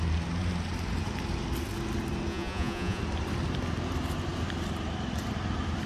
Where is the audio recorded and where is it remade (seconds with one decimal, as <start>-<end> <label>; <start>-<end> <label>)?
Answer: 0.0-2.3 recorded; 2.3-3.0 remade; 3.0-5.9 recorded